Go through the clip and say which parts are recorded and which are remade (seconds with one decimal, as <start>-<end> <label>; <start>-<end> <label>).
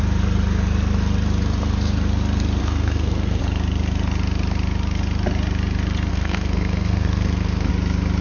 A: 0.0-2.6 recorded; 2.6-3.4 remade; 3.4-6.1 recorded; 6.1-7.7 remade; 7.7-8.2 recorded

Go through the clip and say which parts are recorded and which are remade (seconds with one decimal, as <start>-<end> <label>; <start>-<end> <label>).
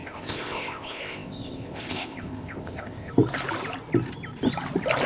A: 0.0-3.1 remade; 3.1-5.1 recorded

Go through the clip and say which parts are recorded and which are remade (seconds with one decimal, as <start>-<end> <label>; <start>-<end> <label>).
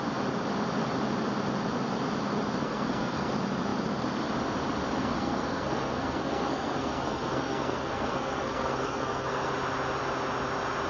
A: 0.0-2.6 recorded; 2.6-3.3 remade; 3.3-5.0 recorded; 5.0-9.5 remade; 9.5-10.9 recorded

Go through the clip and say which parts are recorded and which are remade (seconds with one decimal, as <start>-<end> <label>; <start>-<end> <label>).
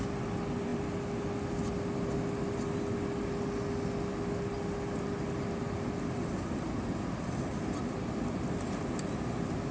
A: 0.0-9.7 recorded